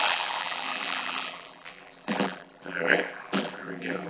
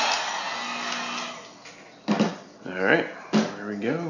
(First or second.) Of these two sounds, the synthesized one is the first